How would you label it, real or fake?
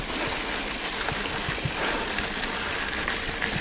real